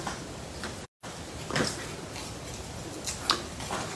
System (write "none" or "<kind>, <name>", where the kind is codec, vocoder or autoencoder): none